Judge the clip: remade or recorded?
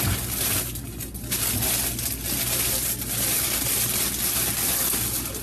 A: recorded